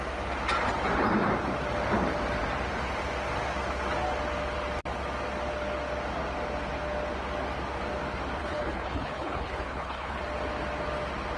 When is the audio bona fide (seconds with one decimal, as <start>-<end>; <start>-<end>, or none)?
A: 0.0-8.4; 10.2-11.4